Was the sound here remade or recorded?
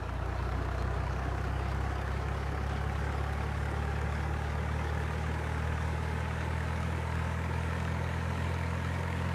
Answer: remade